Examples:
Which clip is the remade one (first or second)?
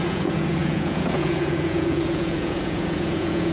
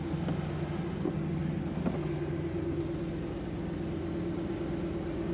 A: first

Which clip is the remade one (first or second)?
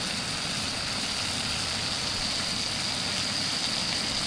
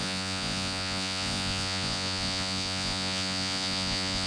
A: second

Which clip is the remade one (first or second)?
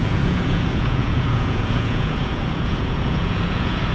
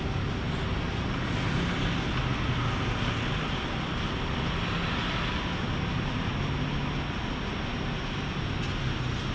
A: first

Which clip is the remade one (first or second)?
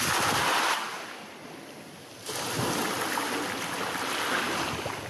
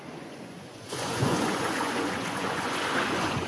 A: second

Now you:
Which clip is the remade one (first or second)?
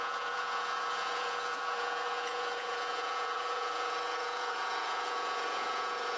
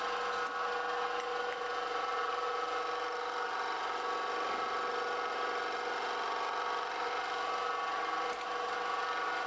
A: first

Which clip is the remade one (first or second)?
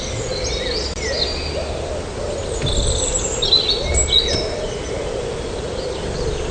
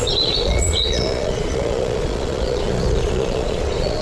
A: second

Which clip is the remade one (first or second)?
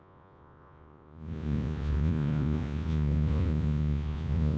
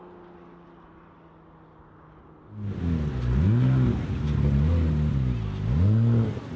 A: first